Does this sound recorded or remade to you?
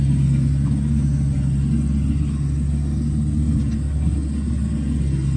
recorded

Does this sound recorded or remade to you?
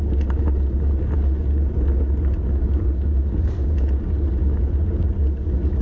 recorded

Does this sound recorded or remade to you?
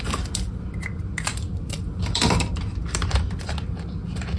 remade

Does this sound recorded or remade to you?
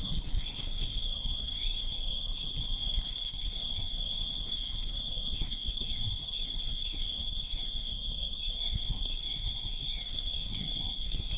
remade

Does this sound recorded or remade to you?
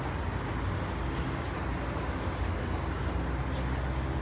recorded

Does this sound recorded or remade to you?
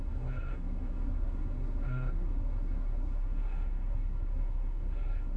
remade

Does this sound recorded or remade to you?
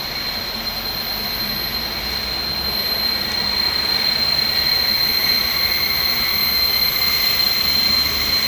recorded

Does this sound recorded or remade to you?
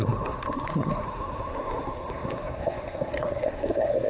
remade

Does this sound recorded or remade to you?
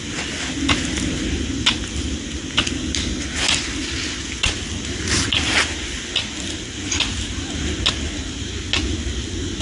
recorded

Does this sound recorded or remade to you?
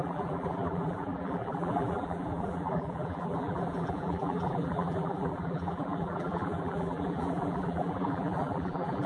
remade